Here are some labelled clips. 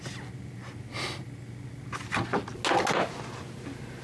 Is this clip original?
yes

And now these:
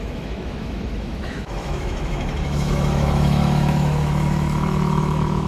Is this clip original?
no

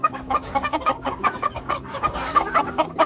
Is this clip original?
no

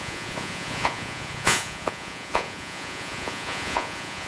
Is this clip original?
no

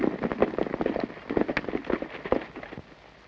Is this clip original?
yes